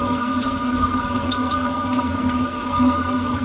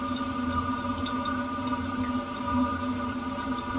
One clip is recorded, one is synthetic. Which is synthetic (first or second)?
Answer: first